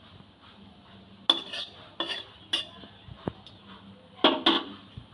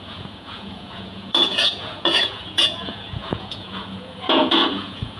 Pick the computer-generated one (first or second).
second